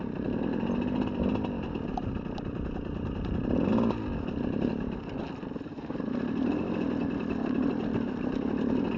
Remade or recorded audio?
recorded